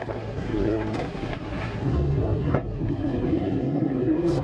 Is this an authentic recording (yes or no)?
no